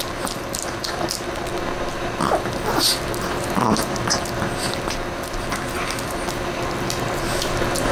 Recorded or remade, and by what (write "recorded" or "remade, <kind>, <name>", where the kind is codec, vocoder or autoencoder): recorded